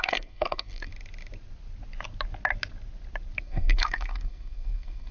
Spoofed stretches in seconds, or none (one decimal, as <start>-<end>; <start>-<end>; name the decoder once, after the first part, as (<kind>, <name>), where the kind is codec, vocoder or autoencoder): 0.0-0.9 (codec, SNAC); 3.4-5.1